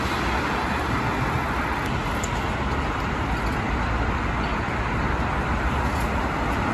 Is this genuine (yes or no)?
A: yes